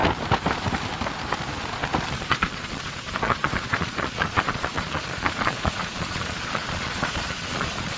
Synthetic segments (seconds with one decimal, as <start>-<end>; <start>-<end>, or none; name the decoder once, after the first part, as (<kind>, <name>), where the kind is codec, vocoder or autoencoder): 2.1-8.0 (vocoder, Vocos)